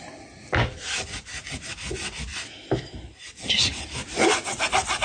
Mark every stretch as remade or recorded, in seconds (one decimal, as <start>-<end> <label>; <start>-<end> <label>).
0.0-5.0 recorded